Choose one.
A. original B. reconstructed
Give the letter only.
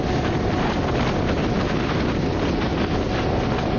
A